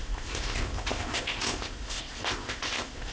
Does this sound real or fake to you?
fake